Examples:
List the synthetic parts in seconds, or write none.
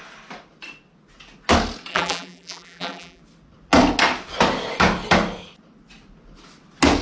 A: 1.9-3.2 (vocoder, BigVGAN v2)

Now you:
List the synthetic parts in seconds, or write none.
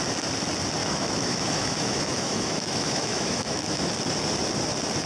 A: 0.8-3.9 (autoencoder, DAC-VAE)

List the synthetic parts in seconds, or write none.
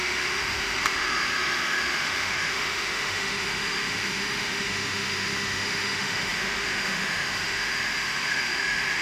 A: 0.0-9.0 (autoencoder, DAC-VAE)